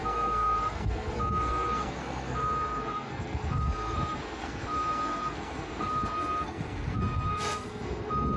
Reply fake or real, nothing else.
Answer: fake